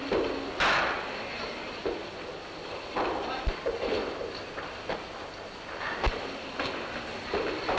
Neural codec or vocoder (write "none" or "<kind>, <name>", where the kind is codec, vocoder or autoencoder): none